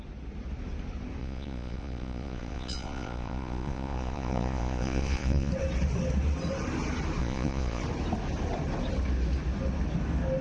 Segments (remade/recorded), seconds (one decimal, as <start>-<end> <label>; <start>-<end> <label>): 0.0-1.2 recorded; 1.2-5.5 remade; 5.5-7.2 recorded; 7.2-7.8 remade; 7.8-10.4 recorded